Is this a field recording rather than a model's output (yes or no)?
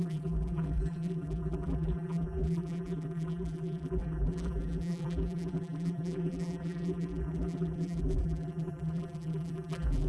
no